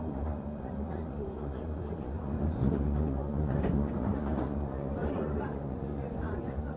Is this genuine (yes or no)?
no